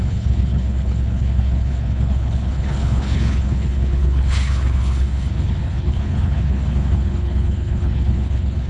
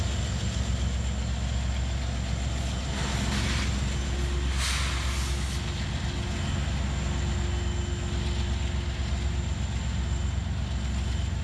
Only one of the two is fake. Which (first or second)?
first